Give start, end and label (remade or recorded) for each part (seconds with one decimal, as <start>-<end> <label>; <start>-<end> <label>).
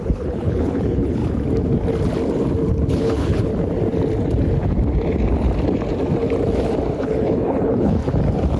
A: 0.0-1.2 remade; 1.2-2.9 recorded; 2.9-3.5 remade; 3.5-7.0 recorded; 7.0-8.0 remade; 8.0-8.6 recorded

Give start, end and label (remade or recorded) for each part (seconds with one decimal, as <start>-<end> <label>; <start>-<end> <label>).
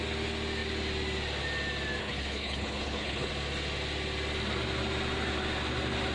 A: 0.0-2.0 recorded; 2.0-3.3 remade; 3.3-6.1 recorded